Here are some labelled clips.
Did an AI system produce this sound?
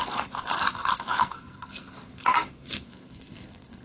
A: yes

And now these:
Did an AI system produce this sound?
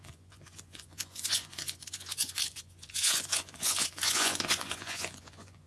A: yes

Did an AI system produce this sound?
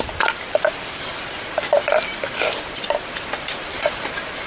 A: yes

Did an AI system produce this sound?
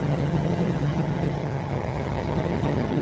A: yes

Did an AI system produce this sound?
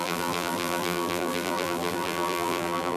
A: yes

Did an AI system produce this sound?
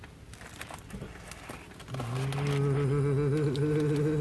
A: no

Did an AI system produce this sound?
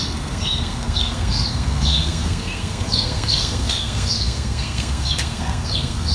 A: yes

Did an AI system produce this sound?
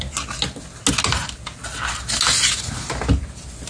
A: no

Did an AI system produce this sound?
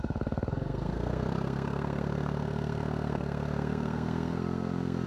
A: yes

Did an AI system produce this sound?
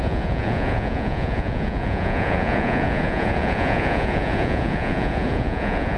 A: yes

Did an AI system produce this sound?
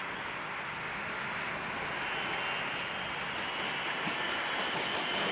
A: no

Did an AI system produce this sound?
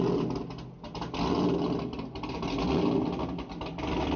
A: no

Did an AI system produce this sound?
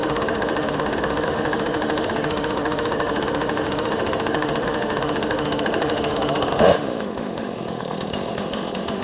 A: yes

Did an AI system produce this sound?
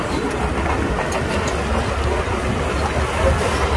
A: no